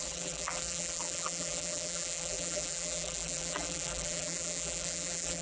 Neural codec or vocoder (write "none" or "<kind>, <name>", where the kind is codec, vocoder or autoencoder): vocoder, BigVGAN v2